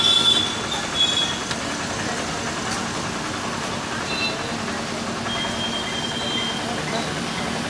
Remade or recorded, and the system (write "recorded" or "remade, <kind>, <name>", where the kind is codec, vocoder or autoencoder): recorded